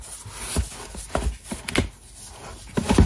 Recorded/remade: recorded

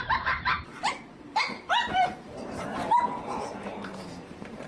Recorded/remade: remade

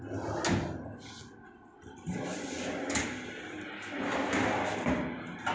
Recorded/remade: recorded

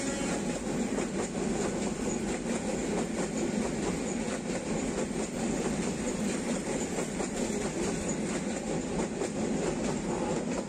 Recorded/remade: recorded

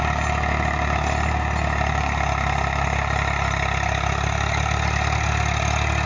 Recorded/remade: recorded